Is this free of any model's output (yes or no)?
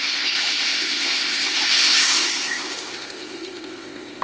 no